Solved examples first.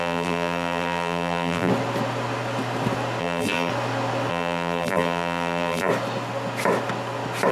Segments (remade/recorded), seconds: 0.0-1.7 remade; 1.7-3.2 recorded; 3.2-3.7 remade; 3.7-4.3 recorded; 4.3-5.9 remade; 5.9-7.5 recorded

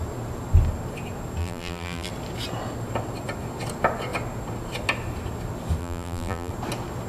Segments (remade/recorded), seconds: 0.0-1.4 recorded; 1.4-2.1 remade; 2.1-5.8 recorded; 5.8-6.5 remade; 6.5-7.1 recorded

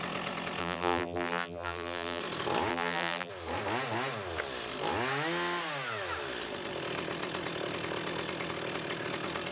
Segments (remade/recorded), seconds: 0.0-0.6 recorded; 0.6-2.2 remade; 2.2-2.7 recorded; 2.7-3.3 remade; 3.3-9.5 recorded

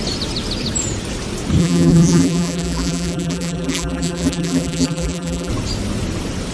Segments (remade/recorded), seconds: 0.0-1.6 recorded; 1.6-5.5 remade; 5.5-6.5 recorded